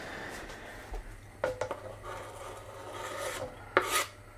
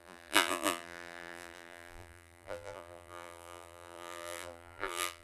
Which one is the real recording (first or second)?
first